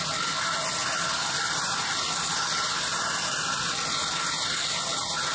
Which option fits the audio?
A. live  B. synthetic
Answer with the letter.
A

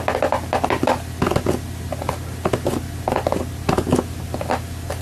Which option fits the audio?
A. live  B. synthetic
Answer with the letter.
A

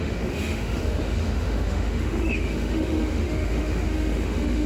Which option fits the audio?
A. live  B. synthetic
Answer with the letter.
B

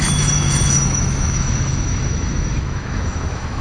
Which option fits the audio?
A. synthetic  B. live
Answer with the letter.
A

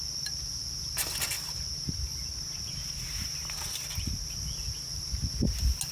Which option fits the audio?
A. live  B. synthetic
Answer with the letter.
A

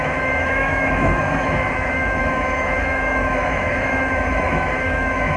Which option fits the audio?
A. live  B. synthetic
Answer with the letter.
B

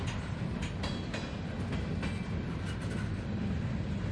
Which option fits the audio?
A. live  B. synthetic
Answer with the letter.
A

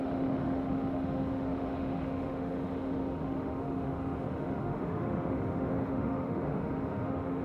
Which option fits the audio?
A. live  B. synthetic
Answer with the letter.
B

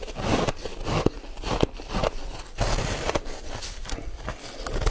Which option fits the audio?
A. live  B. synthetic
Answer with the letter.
A